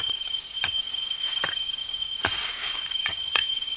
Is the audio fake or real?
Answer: fake